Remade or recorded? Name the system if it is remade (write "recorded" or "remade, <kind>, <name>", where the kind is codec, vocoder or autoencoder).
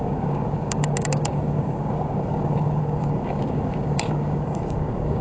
remade, codec, DAC